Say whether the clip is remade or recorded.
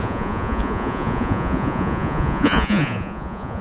remade